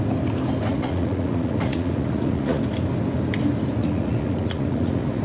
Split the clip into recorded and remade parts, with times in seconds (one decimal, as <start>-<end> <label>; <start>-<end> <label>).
0.0-0.7 recorded; 0.7-2.6 remade; 2.6-3.8 recorded; 3.8-5.2 remade